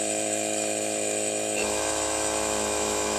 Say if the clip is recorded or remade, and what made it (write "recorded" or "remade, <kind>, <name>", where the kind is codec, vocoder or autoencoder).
remade, autoencoder, DAC-VAE